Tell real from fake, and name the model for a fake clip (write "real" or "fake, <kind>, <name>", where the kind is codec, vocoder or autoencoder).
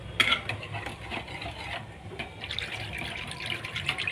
real